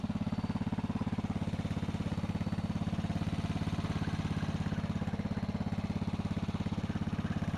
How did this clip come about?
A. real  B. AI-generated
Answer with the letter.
A